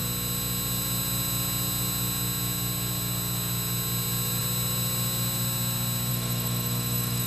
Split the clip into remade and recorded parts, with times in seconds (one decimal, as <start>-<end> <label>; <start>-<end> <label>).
0.0-6.1 recorded; 6.1-7.3 remade